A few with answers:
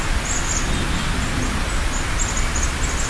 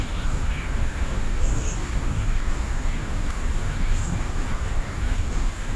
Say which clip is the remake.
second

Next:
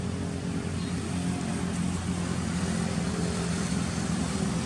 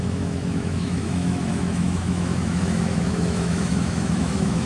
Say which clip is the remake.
second